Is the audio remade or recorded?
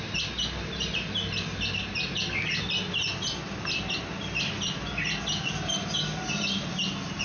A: recorded